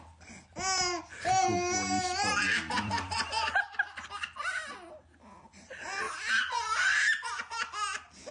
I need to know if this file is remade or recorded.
recorded